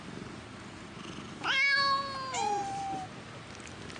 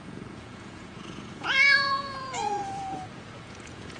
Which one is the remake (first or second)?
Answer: second